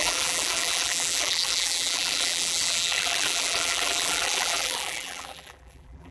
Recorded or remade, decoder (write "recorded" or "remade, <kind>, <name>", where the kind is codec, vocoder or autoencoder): remade, vocoder, BigVGAN v2